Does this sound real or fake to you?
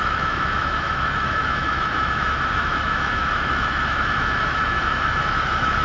fake